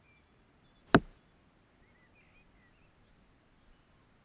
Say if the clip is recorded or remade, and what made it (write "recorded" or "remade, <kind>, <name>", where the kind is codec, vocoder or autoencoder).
recorded